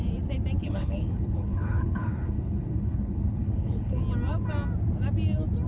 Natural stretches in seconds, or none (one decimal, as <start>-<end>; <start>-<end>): 0.0-0.6; 4.0-5.7